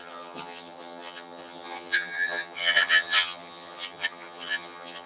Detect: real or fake fake